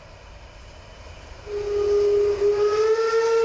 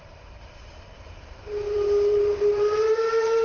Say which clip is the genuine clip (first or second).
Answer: first